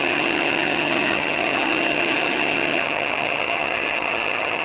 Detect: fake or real fake